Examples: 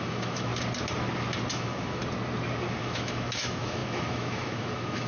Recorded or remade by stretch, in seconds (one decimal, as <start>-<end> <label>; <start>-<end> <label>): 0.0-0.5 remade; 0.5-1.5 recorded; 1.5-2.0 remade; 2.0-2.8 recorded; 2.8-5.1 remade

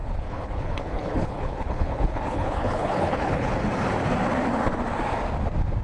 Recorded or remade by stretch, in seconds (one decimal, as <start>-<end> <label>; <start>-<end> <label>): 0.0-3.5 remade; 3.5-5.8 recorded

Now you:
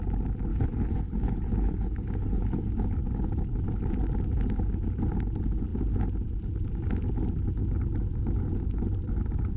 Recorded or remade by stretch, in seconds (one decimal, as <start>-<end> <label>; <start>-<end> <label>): 0.0-0.5 recorded; 0.5-2.7 remade; 2.7-9.6 recorded

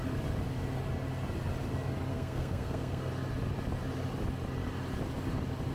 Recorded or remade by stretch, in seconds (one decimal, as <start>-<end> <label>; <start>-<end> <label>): 0.0-2.1 recorded; 2.1-3.1 remade; 3.1-5.7 recorded